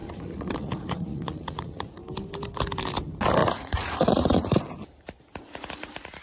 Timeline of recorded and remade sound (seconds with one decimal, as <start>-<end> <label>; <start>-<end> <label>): 0.0-2.0 remade; 2.0-3.4 recorded; 3.4-4.6 remade; 4.6-6.2 recorded